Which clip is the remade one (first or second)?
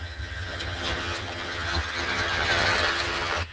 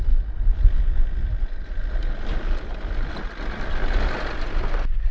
first